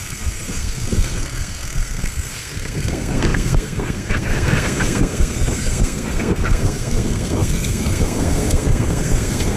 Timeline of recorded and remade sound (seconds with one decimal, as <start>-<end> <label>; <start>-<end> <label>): 0.0-9.6 remade